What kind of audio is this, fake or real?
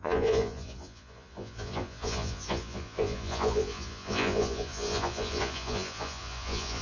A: fake